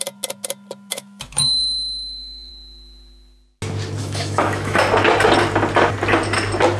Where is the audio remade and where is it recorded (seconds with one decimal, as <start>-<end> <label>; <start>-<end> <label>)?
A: 0.0-0.9 recorded; 0.9-2.5 remade; 2.5-4.0 recorded; 4.0-4.8 remade; 4.8-6.8 recorded